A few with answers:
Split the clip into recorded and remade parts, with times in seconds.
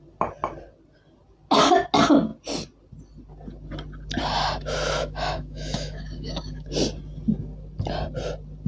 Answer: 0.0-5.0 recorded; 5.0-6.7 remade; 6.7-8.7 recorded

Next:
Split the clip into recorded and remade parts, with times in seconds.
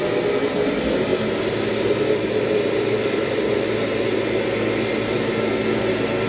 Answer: 0.0-6.3 recorded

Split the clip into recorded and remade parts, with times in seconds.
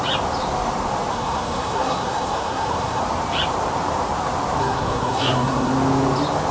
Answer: 0.0-1.1 recorded; 1.1-3.0 remade; 3.0-4.6 recorded; 4.6-5.7 remade; 5.7-6.5 recorded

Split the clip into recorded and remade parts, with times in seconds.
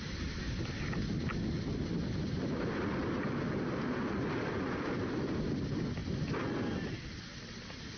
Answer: 0.0-8.0 recorded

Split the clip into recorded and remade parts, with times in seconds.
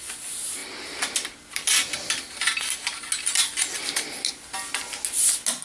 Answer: 0.0-5.6 recorded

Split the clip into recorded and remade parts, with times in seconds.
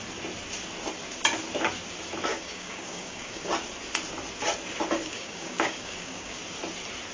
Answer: 0.0-2.3 recorded; 2.3-3.4 remade; 3.4-5.0 recorded; 5.0-6.4 remade; 6.4-7.1 recorded